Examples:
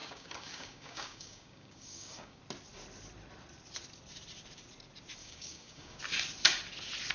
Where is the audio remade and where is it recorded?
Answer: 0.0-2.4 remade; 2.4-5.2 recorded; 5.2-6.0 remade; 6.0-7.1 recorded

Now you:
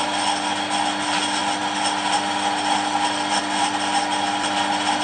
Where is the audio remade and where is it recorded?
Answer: 0.0-5.0 recorded

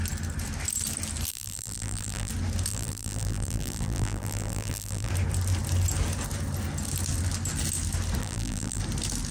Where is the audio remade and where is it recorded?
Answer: 0.0-1.3 recorded; 1.3-2.3 remade; 2.3-2.7 recorded; 2.7-5.1 remade; 5.1-8.2 recorded; 8.2-8.8 remade; 8.8-9.3 recorded

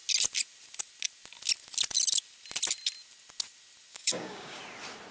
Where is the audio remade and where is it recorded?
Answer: 0.0-3.9 recorded; 3.9-4.6 remade; 4.6-5.1 recorded

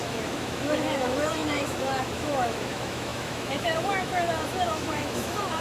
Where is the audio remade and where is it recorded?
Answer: 0.0-5.6 remade

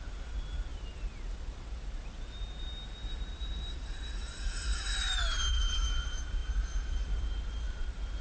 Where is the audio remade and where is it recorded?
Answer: 0.0-8.2 remade

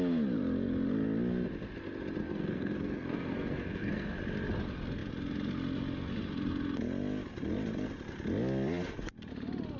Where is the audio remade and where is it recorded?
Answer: 0.0-2.2 recorded; 2.2-4.2 remade; 4.2-9.8 recorded

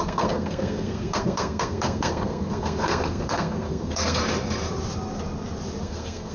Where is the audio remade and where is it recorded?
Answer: 0.0-4.2 remade; 4.2-5.8 recorded; 5.8-6.3 remade